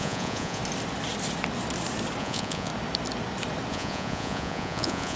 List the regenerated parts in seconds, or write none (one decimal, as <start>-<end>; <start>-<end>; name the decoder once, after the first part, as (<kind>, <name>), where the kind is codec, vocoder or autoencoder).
0.0-0.6 (vocoder, Vocos); 2.2-2.7; 3.7-5.2